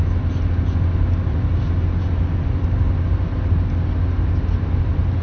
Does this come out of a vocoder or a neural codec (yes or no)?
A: no